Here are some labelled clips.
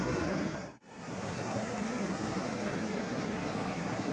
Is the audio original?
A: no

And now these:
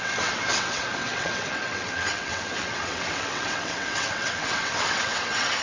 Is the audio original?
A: no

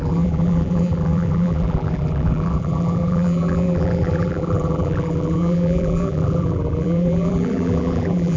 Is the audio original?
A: no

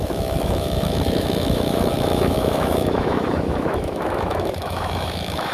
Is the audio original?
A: no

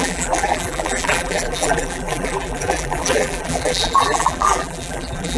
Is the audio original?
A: no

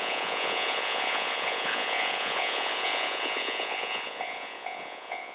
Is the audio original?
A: no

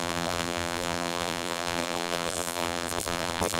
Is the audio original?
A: no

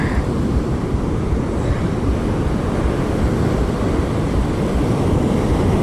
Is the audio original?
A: yes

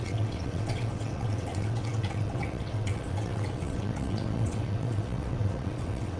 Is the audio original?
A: no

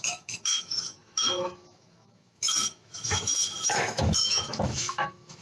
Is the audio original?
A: no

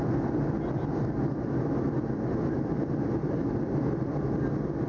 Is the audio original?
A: yes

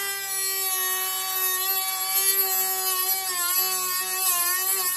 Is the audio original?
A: yes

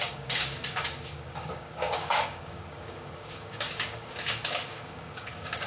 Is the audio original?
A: no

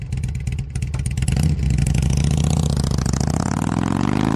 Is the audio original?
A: yes